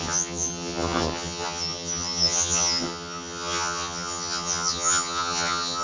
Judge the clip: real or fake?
fake